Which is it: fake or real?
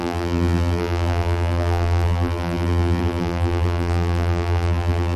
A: fake